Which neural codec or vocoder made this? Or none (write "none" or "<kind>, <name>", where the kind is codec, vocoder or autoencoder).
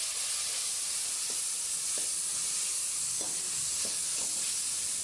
none